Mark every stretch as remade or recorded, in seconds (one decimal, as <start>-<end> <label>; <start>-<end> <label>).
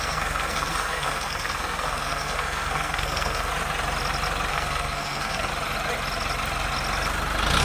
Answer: 0.0-3.5 remade; 3.5-4.5 recorded; 4.5-5.5 remade; 5.5-7.6 recorded